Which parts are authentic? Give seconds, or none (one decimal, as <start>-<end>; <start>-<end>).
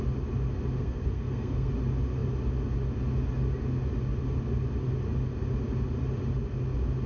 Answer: 0.0-0.8; 1.7-7.1